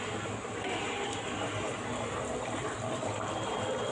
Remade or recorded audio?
recorded